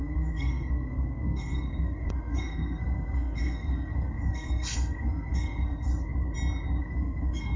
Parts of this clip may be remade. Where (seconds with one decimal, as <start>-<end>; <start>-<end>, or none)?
0.0-5.9; 6.8-7.6